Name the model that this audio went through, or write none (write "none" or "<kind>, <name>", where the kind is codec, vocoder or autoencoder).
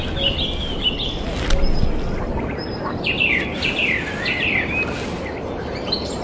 none